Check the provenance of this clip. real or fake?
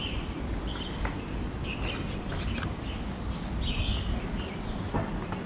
real